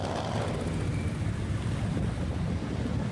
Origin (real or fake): real